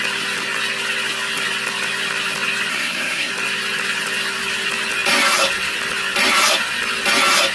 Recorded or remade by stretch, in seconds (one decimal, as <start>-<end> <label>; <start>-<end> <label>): 0.0-2.7 recorded; 2.7-3.3 remade; 3.3-7.5 recorded